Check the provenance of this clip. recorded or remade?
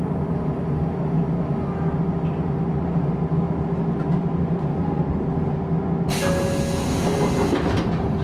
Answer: recorded